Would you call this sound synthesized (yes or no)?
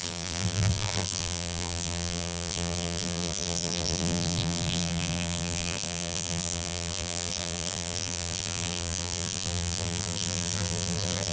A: yes